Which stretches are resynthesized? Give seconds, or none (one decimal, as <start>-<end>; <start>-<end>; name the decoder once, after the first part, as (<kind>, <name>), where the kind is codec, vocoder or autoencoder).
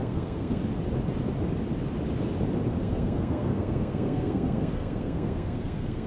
0.0-0.6 (codec, SNAC); 2.7-6.1